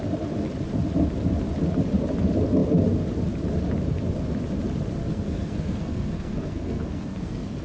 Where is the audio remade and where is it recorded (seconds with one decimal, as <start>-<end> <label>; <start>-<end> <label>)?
0.0-5.0 recorded; 5.0-7.6 remade